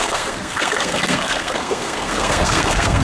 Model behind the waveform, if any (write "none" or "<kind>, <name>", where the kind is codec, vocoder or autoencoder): codec, SNAC